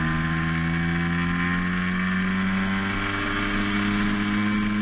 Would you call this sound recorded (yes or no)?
yes